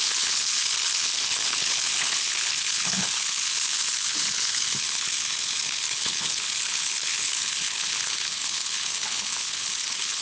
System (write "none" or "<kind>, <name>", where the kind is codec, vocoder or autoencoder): codec, HILCodec